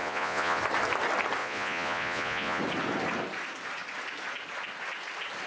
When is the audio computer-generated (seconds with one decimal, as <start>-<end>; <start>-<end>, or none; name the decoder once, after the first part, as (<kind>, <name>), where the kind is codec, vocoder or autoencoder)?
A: 0.0-0.6 (vocoder, Vocos); 1.4-2.6